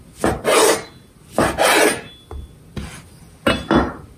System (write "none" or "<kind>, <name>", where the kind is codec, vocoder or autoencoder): none